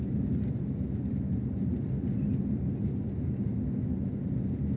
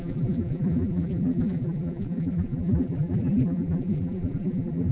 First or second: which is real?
first